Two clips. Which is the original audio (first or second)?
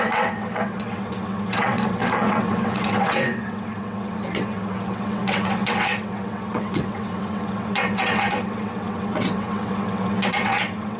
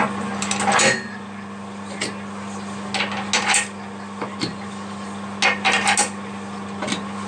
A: second